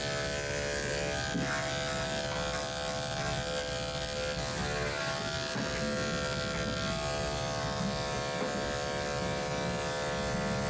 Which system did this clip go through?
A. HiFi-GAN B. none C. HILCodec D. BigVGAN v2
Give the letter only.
B